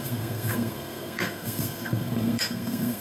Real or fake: fake